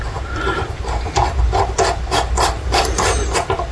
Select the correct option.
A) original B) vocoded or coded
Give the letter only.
A